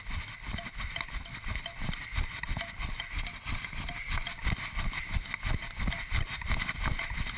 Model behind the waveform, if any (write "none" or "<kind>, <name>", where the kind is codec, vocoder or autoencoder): vocoder, BigVGAN v2